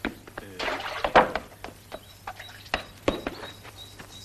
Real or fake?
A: fake